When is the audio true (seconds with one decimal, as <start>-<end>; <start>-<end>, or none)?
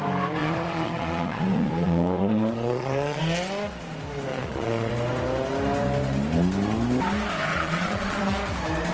0.0-0.4; 3.2-4.3; 4.9-7.5; 8.2-8.9